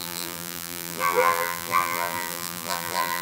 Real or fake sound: fake